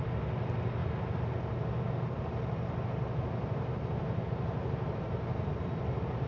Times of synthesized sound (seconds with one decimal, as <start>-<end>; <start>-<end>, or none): none